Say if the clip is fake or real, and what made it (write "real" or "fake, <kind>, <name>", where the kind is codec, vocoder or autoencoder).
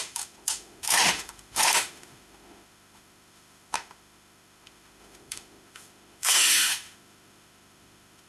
fake, autoencoder, DAC-VAE